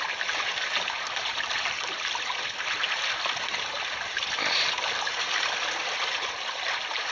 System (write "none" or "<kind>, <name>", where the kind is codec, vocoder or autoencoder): none